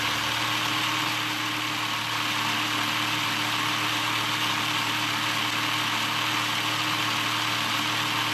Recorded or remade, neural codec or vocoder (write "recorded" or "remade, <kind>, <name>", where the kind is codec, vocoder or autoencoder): recorded